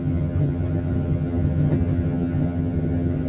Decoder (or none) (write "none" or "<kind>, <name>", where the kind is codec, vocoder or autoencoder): vocoder, HiFi-GAN